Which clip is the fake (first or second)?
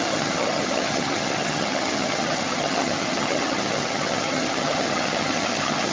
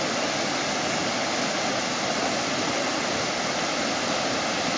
first